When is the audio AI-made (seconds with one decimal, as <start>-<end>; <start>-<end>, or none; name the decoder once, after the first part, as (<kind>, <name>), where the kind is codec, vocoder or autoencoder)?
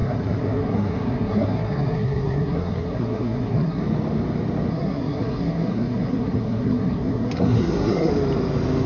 0.0-3.8 (codec, SNAC); 4.7-8.1